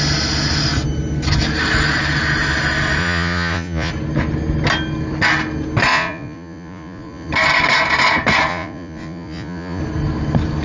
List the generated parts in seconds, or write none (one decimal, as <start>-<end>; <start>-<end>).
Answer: 3.0-3.9; 5.9-7.3; 8.5-9.8